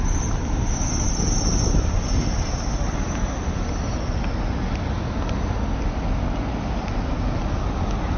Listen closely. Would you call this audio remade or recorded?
recorded